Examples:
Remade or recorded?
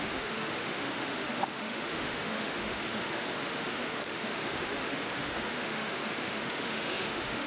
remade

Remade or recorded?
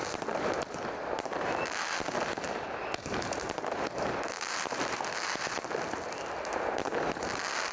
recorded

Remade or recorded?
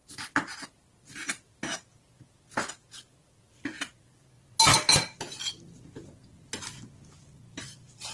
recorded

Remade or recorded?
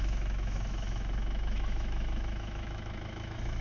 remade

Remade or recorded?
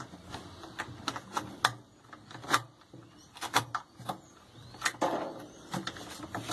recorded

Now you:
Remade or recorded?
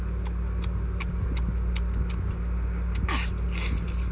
recorded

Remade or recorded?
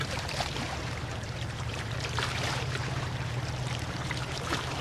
remade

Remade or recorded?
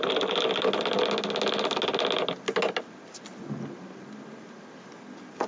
recorded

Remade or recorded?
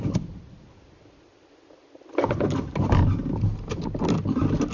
recorded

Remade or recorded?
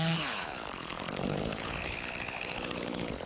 remade